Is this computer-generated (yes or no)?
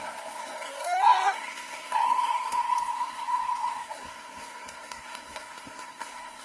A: yes